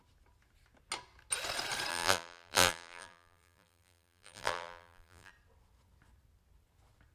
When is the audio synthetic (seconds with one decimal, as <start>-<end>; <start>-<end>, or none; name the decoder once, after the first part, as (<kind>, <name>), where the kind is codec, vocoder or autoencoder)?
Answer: 1.9-5.3 (vocoder, BigVGAN v2)